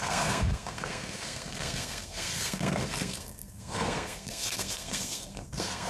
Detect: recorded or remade remade